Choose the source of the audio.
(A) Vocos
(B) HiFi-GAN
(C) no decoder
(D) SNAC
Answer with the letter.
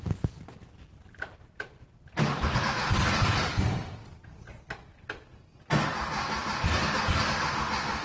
C